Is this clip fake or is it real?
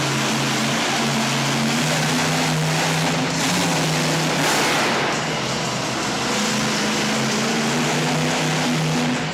real